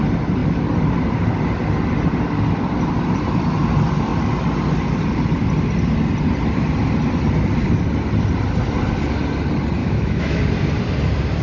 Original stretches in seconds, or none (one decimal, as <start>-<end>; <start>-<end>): 0.0-9.8; 10.4-11.4